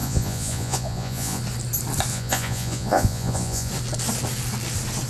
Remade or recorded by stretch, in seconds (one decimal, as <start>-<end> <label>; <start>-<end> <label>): 0.0-1.4 remade; 1.4-2.1 recorded; 2.1-3.7 remade; 3.7-5.1 recorded